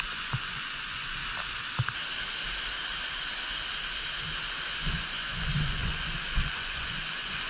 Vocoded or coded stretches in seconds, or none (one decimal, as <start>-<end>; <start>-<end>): 0.0-1.2; 4.7-7.5